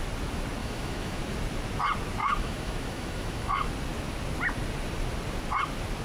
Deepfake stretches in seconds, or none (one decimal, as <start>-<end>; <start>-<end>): 0.6-1.2; 2.2-3.7